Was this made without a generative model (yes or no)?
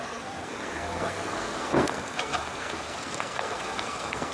no